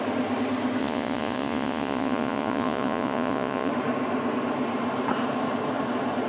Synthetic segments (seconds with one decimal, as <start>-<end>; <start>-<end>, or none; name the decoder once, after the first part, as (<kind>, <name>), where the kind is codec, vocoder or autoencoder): 0.8-3.7 (vocoder, Vocos)